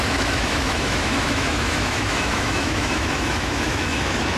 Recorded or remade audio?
remade